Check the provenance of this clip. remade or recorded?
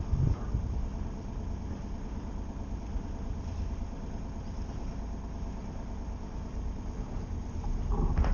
recorded